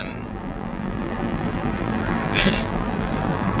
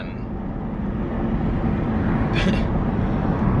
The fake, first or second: first